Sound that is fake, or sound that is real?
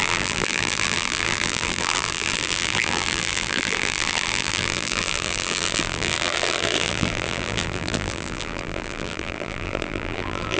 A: fake